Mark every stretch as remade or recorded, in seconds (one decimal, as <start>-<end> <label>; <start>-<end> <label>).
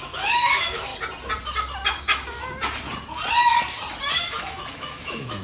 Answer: 0.0-0.9 remade; 0.9-4.1 recorded; 4.1-5.4 remade